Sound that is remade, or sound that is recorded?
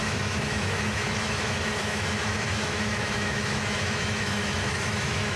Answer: remade